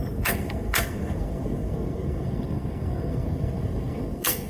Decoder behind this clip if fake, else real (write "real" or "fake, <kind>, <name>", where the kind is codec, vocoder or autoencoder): fake, codec, SNAC